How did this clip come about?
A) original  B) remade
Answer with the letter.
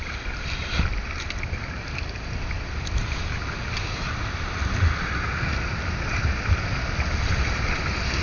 A